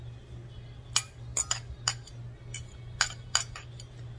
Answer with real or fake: real